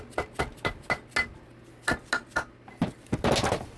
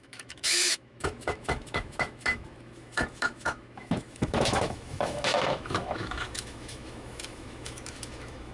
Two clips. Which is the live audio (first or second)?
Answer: first